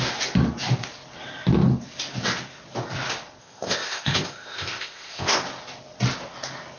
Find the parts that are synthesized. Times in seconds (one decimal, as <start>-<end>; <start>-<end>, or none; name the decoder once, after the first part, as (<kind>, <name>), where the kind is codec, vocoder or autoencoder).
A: 3.4-5.4 (codec, ZipCodec)